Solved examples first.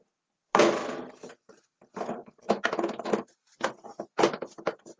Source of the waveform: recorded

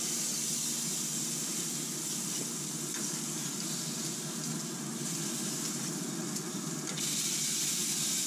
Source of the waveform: recorded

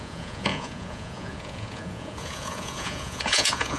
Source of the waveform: remade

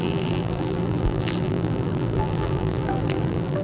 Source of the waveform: remade